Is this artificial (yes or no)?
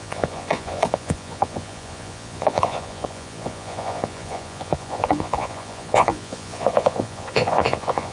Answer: yes